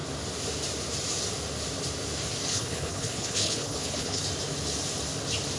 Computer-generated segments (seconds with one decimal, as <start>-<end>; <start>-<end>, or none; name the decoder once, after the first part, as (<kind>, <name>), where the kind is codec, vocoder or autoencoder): 2.5-4.2 (codec, HILCodec)